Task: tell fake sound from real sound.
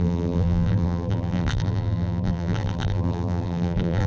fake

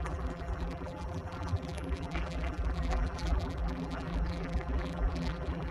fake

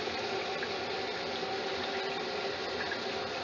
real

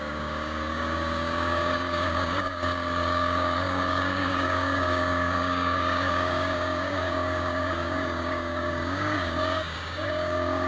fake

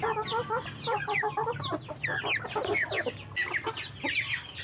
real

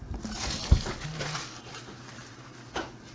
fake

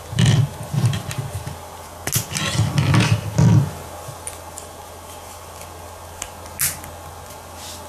real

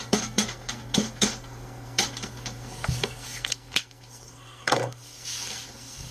fake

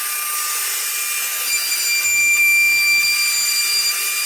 real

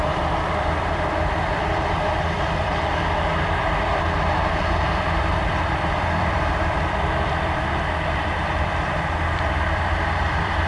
fake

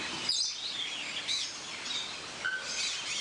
real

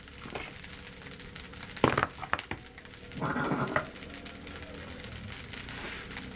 real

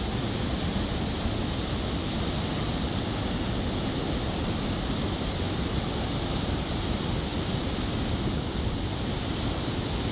real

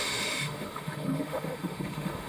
fake